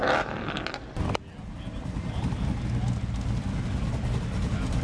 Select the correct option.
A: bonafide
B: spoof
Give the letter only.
A